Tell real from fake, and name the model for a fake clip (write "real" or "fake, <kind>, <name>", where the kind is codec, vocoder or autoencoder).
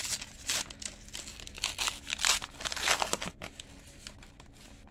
real